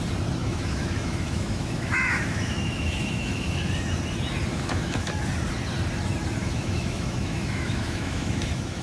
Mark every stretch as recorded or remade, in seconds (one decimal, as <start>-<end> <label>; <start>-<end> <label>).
0.0-0.4 recorded; 0.4-3.7 remade; 3.7-4.5 recorded; 4.5-5.1 remade; 5.1-6.4 recorded; 6.4-8.8 remade